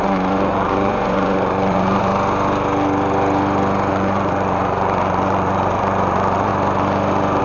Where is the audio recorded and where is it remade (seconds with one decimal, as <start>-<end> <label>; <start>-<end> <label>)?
0.0-2.1 remade; 2.1-3.9 recorded; 3.9-6.5 remade; 6.5-7.4 recorded